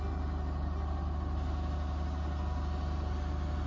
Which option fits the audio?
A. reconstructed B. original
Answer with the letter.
B